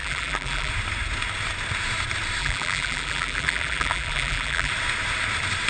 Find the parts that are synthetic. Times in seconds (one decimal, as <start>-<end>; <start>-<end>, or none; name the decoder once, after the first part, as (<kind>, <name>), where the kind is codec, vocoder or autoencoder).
0.0-0.7 (vocoder, BigVGAN v2); 2.4-4.7